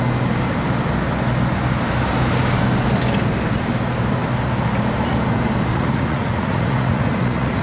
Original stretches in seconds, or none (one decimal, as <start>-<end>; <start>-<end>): 0.0-5.7